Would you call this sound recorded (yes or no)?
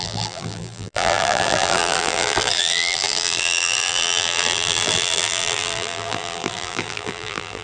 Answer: no